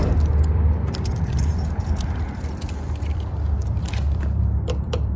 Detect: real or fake fake